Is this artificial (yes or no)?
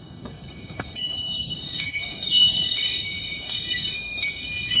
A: yes